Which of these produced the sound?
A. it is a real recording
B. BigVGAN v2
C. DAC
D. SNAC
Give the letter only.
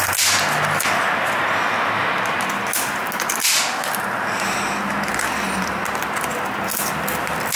A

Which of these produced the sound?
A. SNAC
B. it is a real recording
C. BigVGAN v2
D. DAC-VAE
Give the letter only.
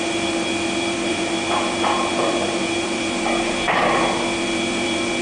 C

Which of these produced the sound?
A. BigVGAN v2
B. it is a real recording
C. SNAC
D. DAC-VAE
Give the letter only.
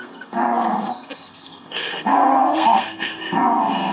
C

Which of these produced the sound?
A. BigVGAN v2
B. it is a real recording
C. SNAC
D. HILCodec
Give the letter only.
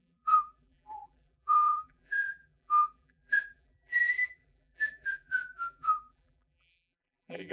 A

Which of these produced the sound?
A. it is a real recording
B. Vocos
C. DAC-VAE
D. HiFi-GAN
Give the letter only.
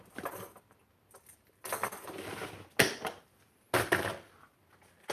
A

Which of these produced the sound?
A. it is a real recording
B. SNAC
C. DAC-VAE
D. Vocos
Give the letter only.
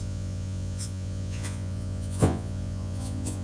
D